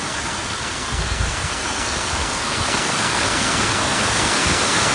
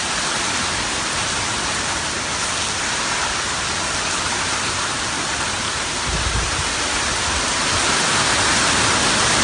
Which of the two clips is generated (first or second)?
first